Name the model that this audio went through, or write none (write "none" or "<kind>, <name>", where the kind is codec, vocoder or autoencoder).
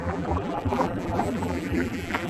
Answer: vocoder, BigVGAN v2